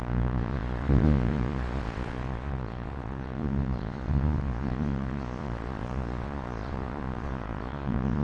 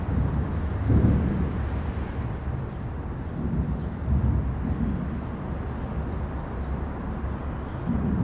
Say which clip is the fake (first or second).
first